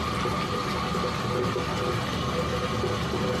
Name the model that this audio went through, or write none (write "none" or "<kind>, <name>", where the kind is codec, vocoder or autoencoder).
none